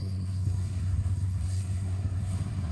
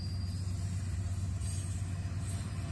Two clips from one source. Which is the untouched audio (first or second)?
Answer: second